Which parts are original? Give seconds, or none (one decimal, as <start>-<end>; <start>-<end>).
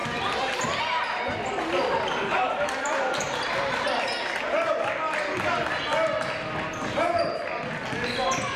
0.8-1.7; 3.6-6.7; 7.4-8.6